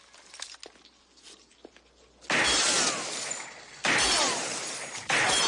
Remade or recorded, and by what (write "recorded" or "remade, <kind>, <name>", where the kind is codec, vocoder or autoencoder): recorded